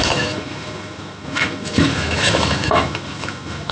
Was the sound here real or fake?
fake